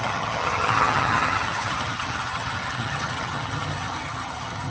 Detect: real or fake fake